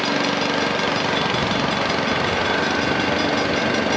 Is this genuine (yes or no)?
yes